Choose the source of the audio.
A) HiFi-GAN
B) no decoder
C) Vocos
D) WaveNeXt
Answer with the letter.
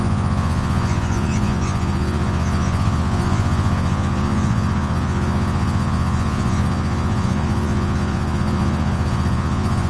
C